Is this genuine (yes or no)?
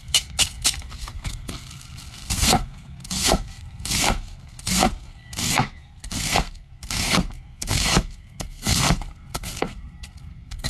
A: no